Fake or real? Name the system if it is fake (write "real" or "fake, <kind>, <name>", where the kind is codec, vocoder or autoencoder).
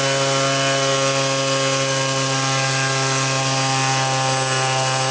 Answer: real